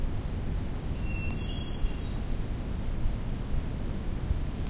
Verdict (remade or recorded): remade